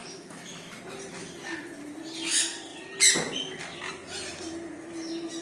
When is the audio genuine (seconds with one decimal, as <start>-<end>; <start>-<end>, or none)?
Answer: 0.8-5.4